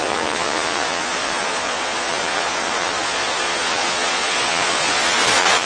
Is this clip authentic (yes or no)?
no